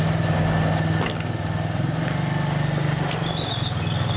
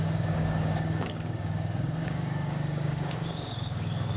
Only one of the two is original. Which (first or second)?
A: first